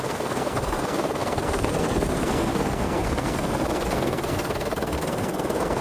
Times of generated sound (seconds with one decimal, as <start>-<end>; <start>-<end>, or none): 0.0-5.8